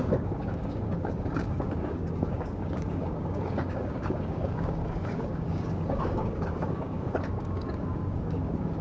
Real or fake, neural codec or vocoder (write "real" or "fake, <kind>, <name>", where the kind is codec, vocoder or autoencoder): fake, codec, DAC